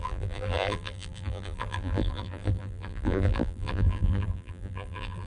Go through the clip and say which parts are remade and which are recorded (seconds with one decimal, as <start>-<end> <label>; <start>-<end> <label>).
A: 0.0-5.3 remade